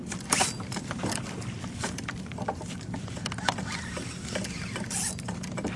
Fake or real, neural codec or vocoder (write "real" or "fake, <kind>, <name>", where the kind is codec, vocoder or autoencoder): fake, vocoder, BigVGAN v2